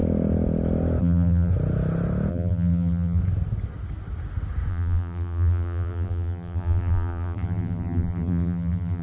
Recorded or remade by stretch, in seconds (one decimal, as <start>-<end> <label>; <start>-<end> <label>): 0.0-1.0 recorded; 1.0-1.5 remade; 1.5-2.3 recorded; 2.3-3.2 remade; 3.2-4.7 recorded; 4.7-9.0 remade